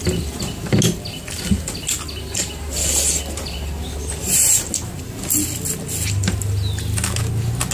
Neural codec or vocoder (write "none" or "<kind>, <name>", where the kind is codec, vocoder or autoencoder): none